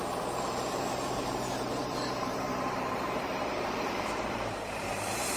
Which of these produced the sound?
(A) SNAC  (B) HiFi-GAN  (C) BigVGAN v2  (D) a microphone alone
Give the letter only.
C